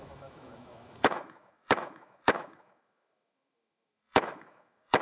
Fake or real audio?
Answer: fake